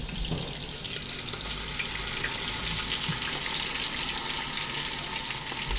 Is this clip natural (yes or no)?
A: yes